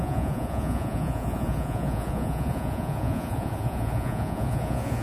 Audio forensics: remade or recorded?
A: remade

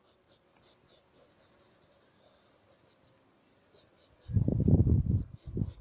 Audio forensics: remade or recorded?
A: recorded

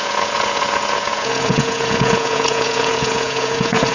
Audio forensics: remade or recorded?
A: remade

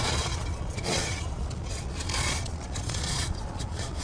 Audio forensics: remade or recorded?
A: remade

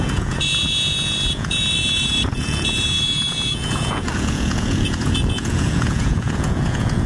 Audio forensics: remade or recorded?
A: remade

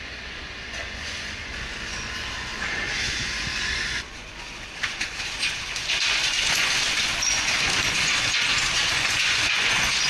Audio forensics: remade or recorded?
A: remade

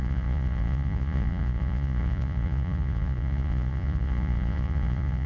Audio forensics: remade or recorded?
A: remade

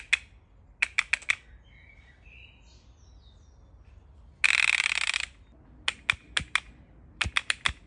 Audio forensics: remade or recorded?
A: recorded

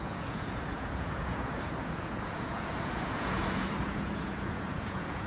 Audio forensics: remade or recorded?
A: remade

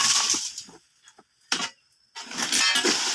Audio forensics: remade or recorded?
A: recorded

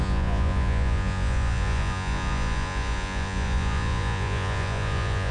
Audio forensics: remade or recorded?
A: remade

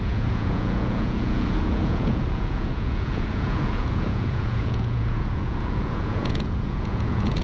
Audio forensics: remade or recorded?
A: remade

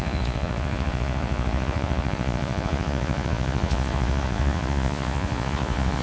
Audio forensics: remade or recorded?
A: remade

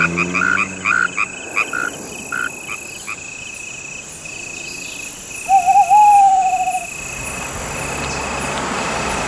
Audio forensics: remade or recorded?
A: recorded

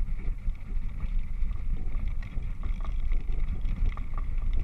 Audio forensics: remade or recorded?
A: recorded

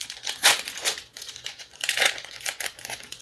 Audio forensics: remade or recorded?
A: remade